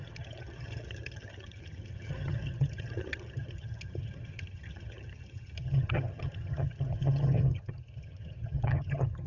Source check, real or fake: fake